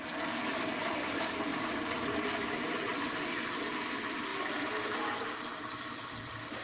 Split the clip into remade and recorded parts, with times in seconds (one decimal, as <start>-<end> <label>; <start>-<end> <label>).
0.0-1.5 recorded; 1.5-2.0 remade; 2.0-6.6 recorded

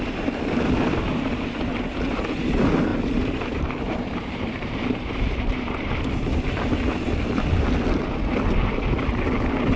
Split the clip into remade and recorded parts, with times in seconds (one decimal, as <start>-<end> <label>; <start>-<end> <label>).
0.0-2.9 recorded; 2.9-6.5 remade; 6.5-9.8 recorded